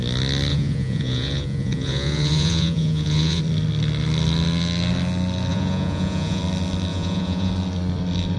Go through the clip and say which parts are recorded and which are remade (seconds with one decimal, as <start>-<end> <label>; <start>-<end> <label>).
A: 0.0-0.5 recorded; 0.5-3.4 remade; 3.4-5.5 recorded; 5.5-6.4 remade; 6.4-6.9 recorded; 6.9-7.5 remade; 7.5-8.4 recorded